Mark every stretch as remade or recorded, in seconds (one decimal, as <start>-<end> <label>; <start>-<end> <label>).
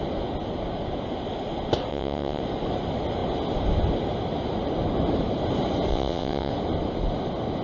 0.0-1.9 recorded; 1.9-2.4 remade; 2.4-5.9 recorded; 5.9-6.5 remade; 6.5-7.6 recorded